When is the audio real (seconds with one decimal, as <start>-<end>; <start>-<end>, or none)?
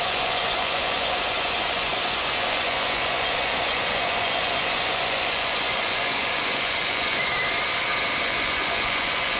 7.3-8.2